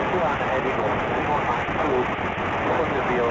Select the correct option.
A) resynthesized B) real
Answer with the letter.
B